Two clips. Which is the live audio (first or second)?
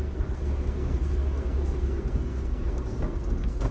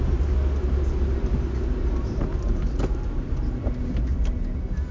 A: second